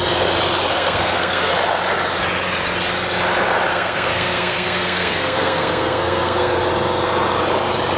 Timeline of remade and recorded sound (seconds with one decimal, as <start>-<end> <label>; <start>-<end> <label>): 0.0-0.7 recorded; 0.7-1.5 remade; 1.5-3.7 recorded; 3.7-6.7 remade; 6.7-8.0 recorded